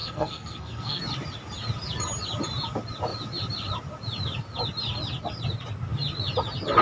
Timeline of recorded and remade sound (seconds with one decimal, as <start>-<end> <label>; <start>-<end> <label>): 0.0-1.0 remade; 1.0-6.8 recorded